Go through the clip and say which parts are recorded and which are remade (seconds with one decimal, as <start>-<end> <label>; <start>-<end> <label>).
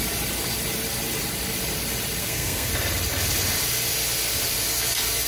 0.0-2.2 recorded; 2.2-2.7 remade; 2.7-5.3 recorded